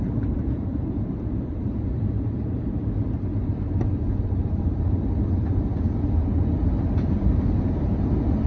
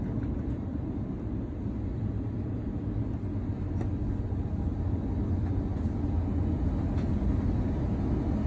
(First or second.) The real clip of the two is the second